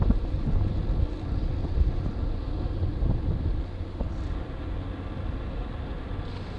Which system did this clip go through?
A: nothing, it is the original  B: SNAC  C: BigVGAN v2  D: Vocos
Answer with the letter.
A